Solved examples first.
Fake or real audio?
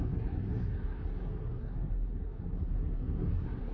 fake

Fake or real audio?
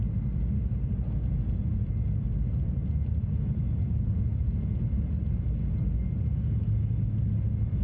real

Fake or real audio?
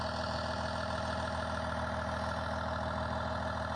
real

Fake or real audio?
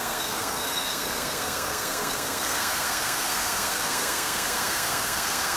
fake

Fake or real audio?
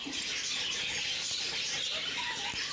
real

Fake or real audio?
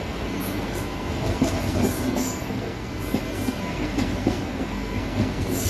fake